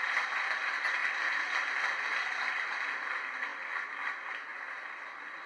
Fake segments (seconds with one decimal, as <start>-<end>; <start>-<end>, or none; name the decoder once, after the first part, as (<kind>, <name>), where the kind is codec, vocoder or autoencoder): 0.0-3.5 (vocoder, BigVGAN v2); 4.1-5.5